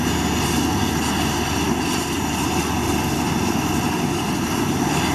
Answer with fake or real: real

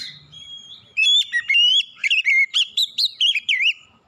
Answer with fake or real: fake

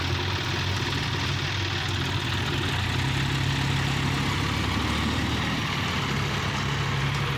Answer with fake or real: real